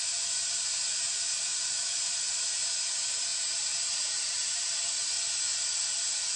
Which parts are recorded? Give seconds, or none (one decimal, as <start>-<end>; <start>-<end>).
0.0-3.3; 4.8-6.4